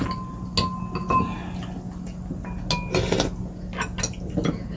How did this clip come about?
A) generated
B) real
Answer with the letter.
B